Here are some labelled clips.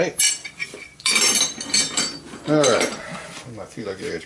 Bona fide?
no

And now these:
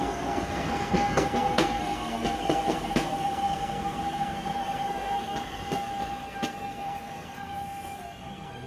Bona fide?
no